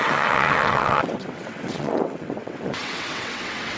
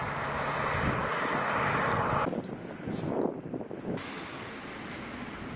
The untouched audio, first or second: second